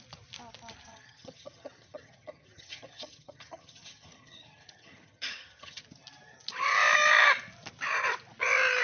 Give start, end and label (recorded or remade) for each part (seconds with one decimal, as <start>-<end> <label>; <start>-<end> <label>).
0.0-0.9 recorded; 0.9-5.8 remade; 5.8-8.8 recorded